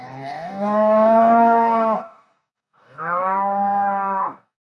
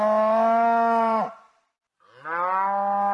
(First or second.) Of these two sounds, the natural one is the second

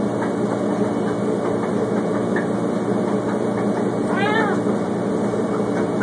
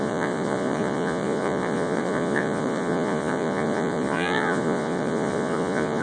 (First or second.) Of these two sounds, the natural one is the first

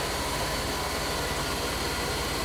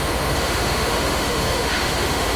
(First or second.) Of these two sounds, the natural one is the first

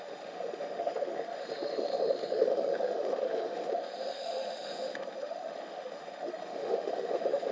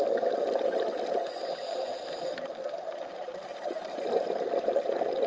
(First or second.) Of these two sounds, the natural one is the second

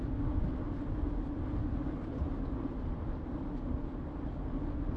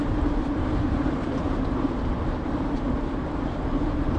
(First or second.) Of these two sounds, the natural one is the first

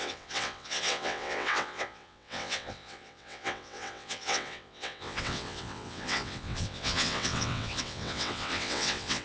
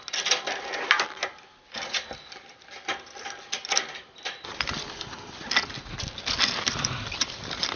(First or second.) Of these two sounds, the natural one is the second